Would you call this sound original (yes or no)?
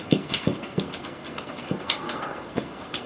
no